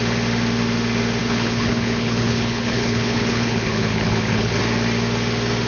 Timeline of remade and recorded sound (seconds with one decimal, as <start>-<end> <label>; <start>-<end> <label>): 0.0-1.2 recorded; 1.2-4.6 remade; 4.6-5.7 recorded